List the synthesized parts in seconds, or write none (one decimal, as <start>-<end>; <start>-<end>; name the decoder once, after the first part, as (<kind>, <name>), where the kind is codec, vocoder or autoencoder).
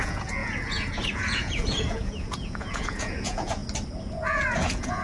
0.0-3.6 (vocoder, Vocos); 4.1-5.0